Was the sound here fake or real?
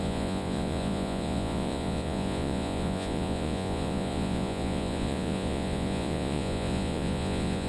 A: fake